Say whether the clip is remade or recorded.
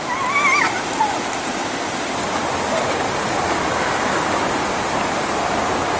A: recorded